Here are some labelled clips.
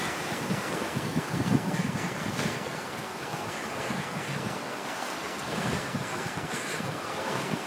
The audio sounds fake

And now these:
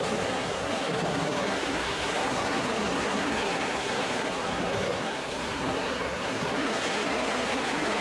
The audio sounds fake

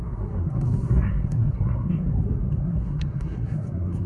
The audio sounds fake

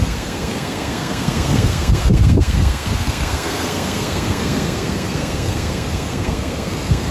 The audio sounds fake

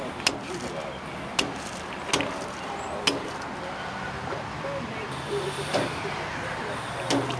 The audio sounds real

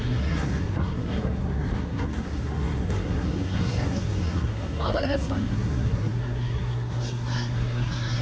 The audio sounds fake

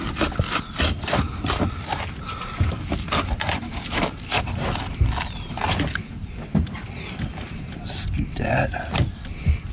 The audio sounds real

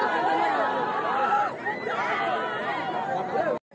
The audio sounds real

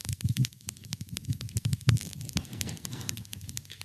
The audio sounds fake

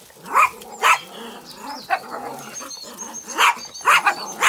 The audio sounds real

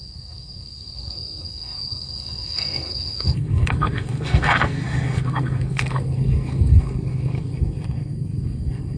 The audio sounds fake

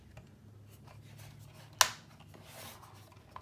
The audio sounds real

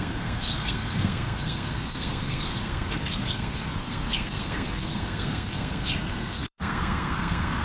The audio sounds fake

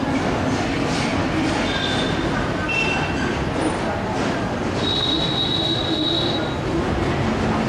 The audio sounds real